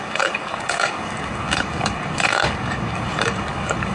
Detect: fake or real fake